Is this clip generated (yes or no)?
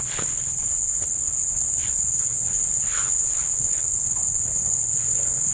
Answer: yes